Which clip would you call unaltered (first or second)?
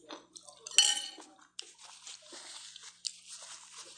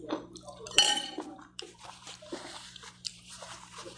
first